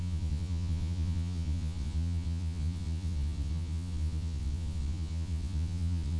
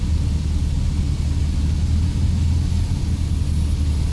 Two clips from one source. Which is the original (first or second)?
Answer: second